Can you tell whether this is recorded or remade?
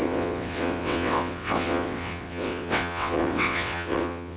remade